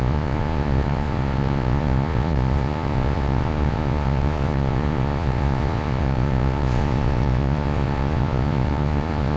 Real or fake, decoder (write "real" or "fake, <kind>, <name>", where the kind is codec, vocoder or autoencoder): fake, vocoder, Vocos